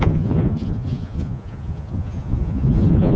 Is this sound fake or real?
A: fake